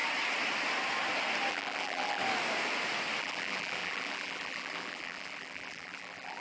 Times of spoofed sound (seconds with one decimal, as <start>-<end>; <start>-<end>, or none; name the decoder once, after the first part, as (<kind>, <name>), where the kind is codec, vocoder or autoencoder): 1.5-2.2 (vocoder, BigVGAN v2); 3.2-6.4